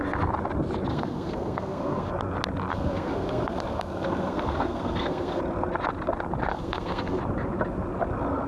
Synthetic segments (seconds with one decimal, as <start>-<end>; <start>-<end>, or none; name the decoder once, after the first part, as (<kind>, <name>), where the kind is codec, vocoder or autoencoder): 0.9-2.1 (codec, SNAC); 2.7-5.4; 6.5-7.2

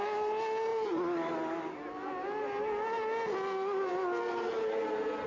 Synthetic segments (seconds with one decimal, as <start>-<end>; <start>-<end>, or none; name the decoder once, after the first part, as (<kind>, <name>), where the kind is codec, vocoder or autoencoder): none